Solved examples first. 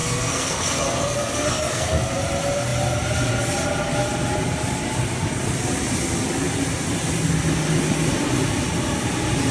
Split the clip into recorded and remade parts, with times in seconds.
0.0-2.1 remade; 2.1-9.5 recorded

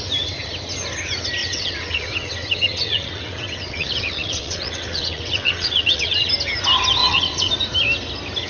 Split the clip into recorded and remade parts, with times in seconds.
0.0-1.4 recorded; 1.4-6.3 remade; 6.3-7.0 recorded; 7.0-7.5 remade; 7.5-8.5 recorded

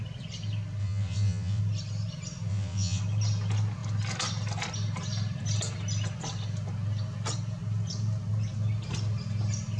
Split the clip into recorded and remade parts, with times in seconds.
0.0-0.8 recorded; 0.8-1.6 remade; 1.6-2.5 recorded; 2.5-3.0 remade; 3.0-9.8 recorded

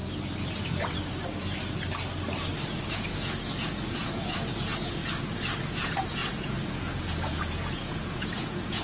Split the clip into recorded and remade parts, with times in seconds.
0.0-2.9 recorded; 2.9-5.0 remade; 5.0-5.6 recorded; 5.6-8.8 remade

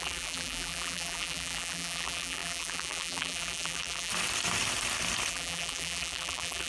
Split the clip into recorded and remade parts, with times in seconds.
0.0-4.1 remade; 4.1-5.3 recorded; 5.3-6.7 remade

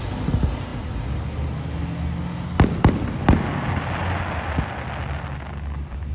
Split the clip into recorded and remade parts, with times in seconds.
0.0-6.1 recorded

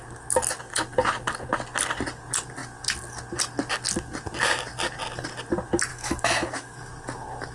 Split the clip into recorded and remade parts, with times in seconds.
0.0-5.9 recorded; 5.9-6.9 remade; 6.9-7.5 recorded